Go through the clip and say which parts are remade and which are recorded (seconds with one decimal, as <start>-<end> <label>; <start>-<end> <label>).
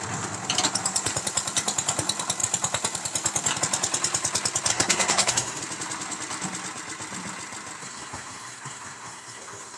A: 0.0-4.7 recorded; 4.7-5.6 remade; 5.6-7.8 recorded; 7.8-9.8 remade